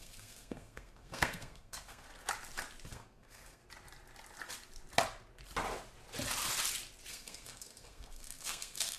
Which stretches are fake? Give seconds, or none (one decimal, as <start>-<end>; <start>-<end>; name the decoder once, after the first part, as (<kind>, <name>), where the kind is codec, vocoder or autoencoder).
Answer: 0.0-2.1 (codec, SNAC); 2.9-3.6; 7.1-9.0